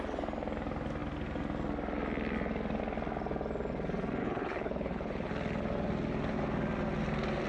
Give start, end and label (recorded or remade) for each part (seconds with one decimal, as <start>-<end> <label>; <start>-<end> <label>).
0.0-4.2 recorded; 4.2-5.3 remade; 5.3-7.5 recorded